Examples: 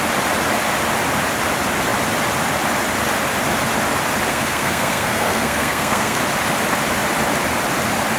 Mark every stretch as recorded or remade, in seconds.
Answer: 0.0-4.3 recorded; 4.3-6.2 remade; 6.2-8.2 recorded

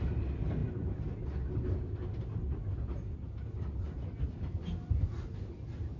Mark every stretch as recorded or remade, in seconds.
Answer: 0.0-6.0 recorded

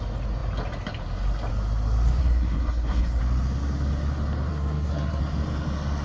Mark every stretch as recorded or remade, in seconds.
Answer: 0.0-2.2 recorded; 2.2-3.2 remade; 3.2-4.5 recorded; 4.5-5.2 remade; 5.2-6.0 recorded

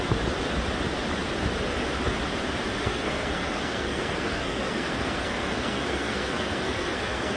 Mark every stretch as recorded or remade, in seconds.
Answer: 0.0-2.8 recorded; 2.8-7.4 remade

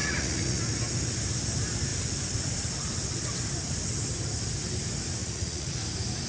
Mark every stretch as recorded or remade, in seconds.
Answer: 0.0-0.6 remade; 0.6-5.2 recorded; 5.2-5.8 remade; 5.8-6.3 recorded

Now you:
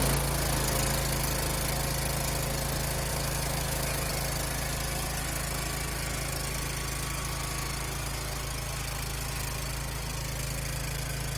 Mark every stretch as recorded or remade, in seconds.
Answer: 0.0-3.1 recorded; 3.1-4.1 remade; 4.1-11.4 recorded